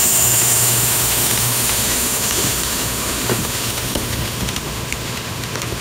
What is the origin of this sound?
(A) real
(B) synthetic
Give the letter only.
B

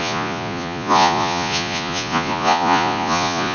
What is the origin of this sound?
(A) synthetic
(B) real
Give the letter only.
A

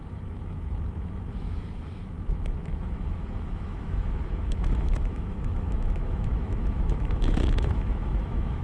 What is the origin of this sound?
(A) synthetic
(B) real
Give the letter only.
A